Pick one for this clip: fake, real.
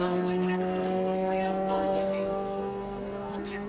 fake